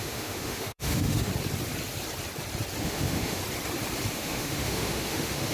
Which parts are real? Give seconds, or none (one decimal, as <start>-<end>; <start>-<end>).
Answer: 1.3-2.8; 3.4-4.1